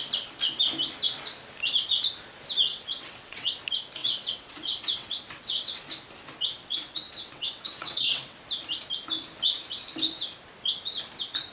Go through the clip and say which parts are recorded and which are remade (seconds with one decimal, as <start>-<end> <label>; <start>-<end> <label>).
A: 0.0-2.7 recorded; 2.7-3.6 remade; 3.6-4.0 recorded; 4.0-5.8 remade; 5.8-6.6 recorded; 6.6-8.4 remade; 8.4-11.5 recorded